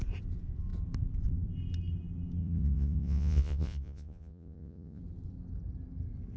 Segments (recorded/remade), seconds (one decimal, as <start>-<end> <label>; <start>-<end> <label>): 0.0-2.4 recorded; 2.4-5.0 remade; 5.0-6.4 recorded